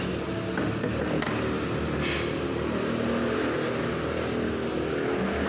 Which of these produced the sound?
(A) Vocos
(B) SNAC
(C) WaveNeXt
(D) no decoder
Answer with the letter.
D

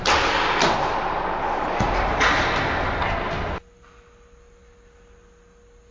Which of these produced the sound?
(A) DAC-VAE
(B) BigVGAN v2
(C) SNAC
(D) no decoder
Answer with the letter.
D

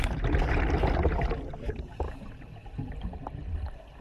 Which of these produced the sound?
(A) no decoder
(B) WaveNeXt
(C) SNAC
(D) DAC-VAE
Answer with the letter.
A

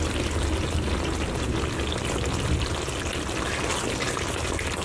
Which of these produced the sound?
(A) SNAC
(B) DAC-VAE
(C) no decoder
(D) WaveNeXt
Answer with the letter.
C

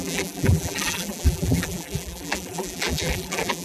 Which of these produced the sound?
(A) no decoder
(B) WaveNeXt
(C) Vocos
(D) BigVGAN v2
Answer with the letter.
D